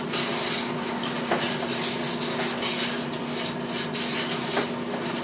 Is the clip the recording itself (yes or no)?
yes